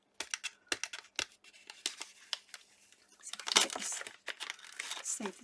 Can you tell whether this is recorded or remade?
recorded